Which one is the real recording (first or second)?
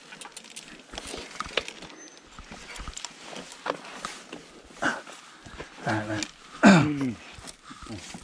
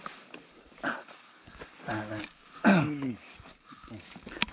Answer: first